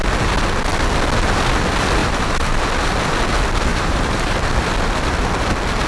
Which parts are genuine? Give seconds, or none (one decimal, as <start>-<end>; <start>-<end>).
0.0-2.0; 2.6-3.7; 4.3-5.9